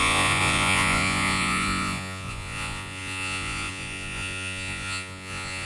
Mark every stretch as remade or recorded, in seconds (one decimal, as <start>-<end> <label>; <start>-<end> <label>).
0.0-5.6 remade

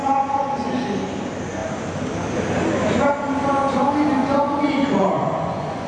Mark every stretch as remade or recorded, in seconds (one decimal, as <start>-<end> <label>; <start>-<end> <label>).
0.0-0.5 remade; 0.5-4.2 recorded; 4.2-5.9 remade

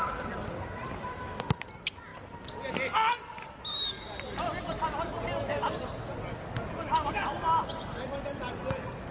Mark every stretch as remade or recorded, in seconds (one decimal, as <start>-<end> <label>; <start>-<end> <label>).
0.0-9.1 recorded